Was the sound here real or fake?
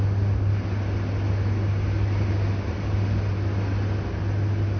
real